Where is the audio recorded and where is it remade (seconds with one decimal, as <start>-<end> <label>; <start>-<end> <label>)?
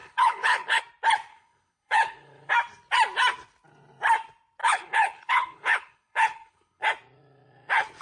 0.0-0.8 remade; 0.8-1.3 recorded; 1.3-2.5 remade; 2.5-4.6 recorded; 4.6-6.8 remade; 6.8-8.0 recorded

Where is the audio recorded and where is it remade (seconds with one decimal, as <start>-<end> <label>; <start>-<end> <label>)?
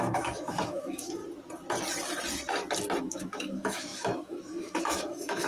0.0-1.2 remade; 1.2-3.0 recorded; 3.0-5.5 remade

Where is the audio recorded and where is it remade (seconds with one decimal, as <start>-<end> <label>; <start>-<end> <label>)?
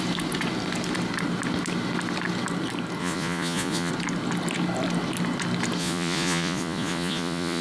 0.0-3.0 recorded; 3.0-3.9 remade; 3.9-5.8 recorded; 5.8-7.6 remade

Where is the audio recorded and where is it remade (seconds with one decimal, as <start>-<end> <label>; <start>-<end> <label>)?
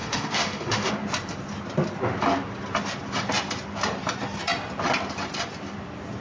0.0-0.9 remade; 0.9-6.2 recorded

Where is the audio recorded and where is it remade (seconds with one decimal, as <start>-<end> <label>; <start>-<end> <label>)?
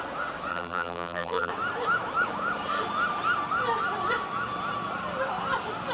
0.0-0.5 recorded; 0.5-1.5 remade; 1.5-5.9 recorded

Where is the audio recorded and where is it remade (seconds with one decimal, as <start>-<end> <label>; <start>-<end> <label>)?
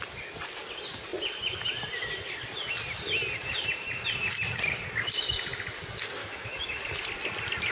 0.0-6.2 recorded; 6.2-6.8 remade; 6.8-7.7 recorded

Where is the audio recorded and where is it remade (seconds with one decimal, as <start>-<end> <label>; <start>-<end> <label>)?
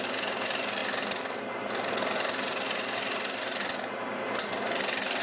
0.0-5.2 recorded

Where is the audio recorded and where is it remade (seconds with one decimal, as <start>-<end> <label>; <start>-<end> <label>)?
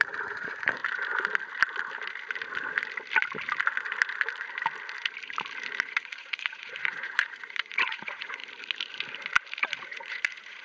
0.0-0.8 remade; 0.8-5.8 recorded; 5.8-8.4 remade; 8.4-9.6 recorded; 9.6-10.6 remade